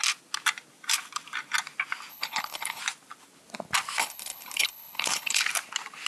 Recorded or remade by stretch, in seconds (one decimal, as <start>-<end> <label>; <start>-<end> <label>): 0.0-2.1 recorded; 2.1-2.8 remade; 2.8-4.0 recorded; 4.0-5.4 remade; 5.4-6.1 recorded